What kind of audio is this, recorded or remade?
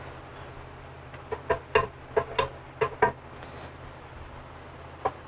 recorded